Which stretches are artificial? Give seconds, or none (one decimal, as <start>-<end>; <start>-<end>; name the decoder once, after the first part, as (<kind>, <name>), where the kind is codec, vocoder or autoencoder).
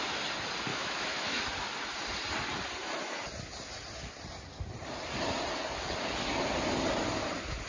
0.7-1.4 (autoencoder, DAC-VAE)